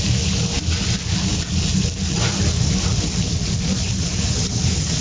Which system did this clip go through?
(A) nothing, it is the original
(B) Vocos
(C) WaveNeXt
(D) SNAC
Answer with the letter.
A